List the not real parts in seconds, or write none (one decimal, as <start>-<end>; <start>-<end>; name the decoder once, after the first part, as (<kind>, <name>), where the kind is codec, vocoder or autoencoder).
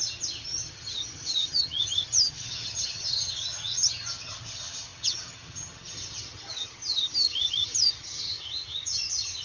0.0-9.4 (vocoder, HiFi-GAN)